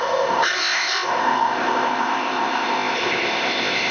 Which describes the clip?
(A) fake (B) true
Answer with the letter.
A